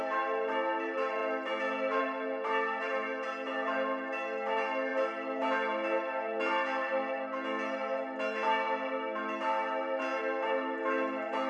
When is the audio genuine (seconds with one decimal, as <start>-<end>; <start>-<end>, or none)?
0.0-11.5